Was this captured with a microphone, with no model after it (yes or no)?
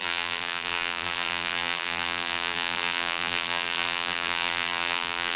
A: no